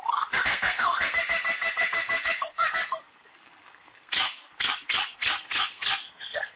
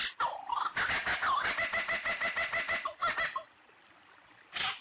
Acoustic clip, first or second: second